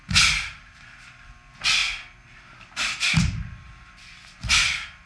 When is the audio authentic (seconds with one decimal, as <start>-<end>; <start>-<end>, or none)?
0.0-5.1